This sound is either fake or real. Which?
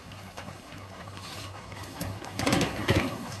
fake